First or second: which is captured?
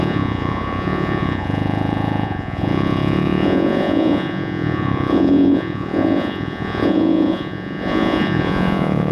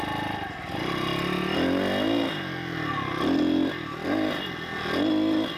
second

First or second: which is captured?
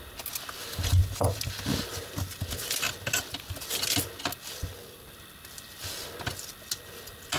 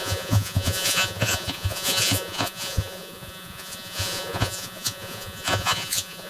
first